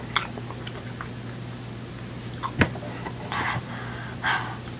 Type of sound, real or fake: real